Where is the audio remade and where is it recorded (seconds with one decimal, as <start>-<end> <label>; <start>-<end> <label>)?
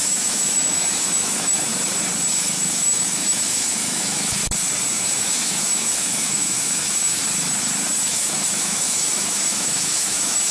0.0-1.7 remade; 1.7-2.3 recorded; 2.3-4.4 remade; 4.4-4.9 recorded; 4.9-7.2 remade; 7.2-8.1 recorded; 8.1-10.5 remade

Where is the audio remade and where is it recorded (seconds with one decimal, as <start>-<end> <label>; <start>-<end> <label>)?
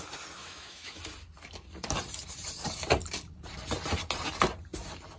0.0-0.4 recorded; 0.4-1.0 remade; 1.0-5.2 recorded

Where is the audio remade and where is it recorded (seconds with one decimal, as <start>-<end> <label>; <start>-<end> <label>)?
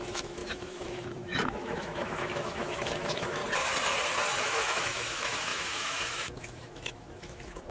0.0-3.4 remade; 3.4-4.4 recorded; 4.4-7.7 remade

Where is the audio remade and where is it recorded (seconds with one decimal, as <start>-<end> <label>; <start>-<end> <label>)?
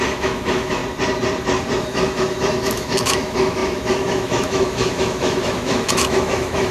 0.0-0.8 remade; 0.8-1.8 recorded; 1.8-6.7 remade